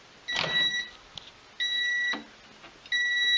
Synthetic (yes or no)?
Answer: no